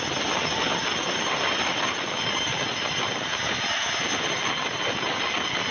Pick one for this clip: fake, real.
real